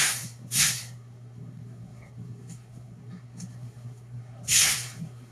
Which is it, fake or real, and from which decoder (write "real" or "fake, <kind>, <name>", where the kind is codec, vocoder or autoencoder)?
fake, codec, SNAC